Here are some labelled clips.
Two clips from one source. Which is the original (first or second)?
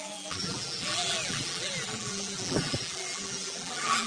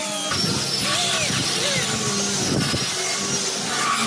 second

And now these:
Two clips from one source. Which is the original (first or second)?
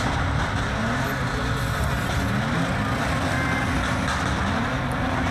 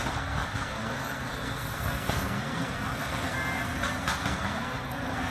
first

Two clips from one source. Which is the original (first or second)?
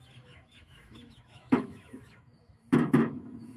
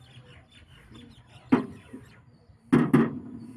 second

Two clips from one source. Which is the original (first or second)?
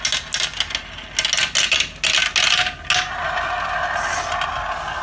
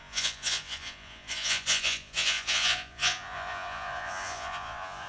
first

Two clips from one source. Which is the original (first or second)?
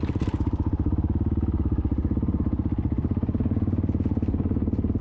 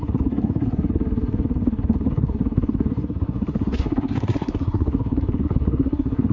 first